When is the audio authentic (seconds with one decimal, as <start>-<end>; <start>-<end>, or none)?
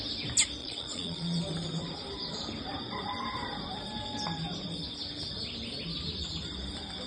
0.0-0.6; 1.4-7.1